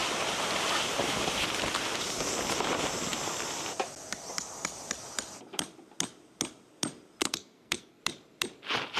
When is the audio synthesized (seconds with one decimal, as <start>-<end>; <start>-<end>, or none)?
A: 7.2-8.0